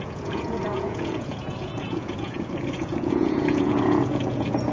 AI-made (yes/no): yes